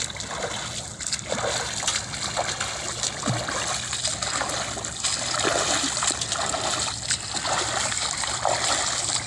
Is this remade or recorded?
recorded